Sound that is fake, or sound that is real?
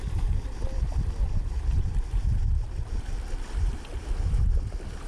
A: real